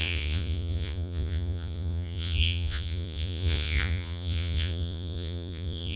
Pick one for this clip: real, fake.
fake